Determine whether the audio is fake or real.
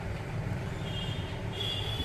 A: fake